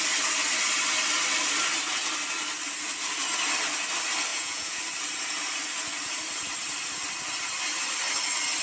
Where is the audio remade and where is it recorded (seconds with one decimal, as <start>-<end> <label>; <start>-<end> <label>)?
0.0-4.3 recorded; 4.3-4.8 remade; 4.8-8.6 recorded